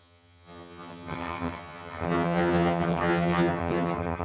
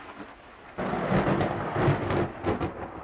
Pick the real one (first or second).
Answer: second